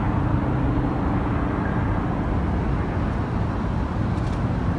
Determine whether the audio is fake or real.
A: real